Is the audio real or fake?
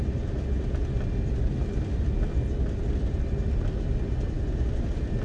real